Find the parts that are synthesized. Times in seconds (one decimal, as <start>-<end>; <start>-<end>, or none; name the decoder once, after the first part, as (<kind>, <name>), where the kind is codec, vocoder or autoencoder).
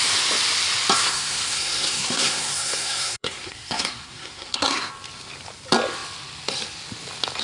1.0-4.9 (codec, SNAC)